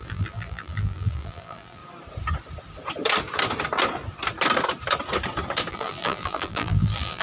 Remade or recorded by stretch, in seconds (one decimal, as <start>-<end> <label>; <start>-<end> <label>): 0.0-1.8 remade; 1.8-5.7 recorded; 5.7-7.2 remade